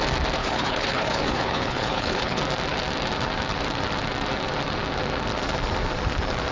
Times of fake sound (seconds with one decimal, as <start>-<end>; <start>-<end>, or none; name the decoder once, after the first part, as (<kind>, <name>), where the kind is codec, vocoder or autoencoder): 0.4-2.4 (codec, HILCodec)